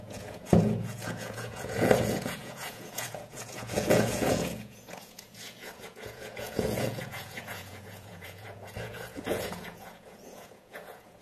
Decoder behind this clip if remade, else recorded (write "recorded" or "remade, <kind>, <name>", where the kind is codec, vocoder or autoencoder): remade, vocoder, Vocos